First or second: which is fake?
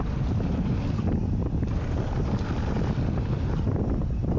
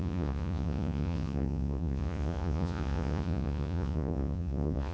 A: second